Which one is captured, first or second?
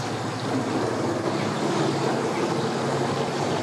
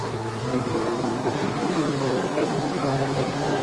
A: first